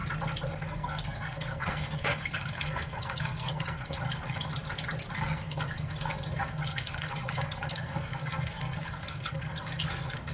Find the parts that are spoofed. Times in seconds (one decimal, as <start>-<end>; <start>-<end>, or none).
0.6-4.5; 5.1-10.3

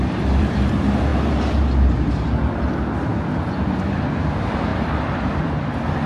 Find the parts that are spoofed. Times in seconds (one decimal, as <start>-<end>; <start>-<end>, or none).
0.0-1.1; 4.2-6.1

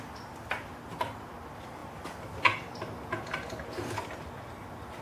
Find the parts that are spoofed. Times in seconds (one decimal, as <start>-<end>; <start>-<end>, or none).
none

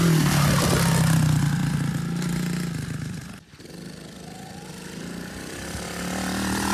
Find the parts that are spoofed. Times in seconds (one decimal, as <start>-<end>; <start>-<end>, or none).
none

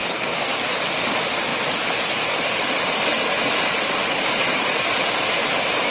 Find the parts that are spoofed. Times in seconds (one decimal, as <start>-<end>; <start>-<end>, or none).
0.0-0.5

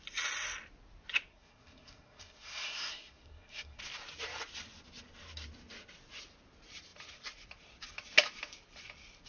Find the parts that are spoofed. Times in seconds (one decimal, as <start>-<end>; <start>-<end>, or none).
1.3-3.8